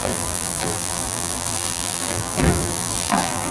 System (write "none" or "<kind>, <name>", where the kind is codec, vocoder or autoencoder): vocoder, BigVGAN v2